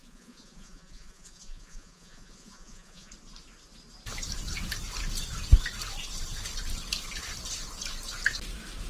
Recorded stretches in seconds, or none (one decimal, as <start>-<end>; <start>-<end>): 3.1-8.9